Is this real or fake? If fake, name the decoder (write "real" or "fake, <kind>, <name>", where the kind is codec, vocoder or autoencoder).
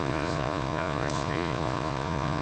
fake, vocoder, Vocos